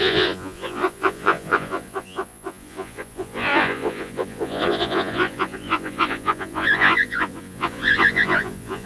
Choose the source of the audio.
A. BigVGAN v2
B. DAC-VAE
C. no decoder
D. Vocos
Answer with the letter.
D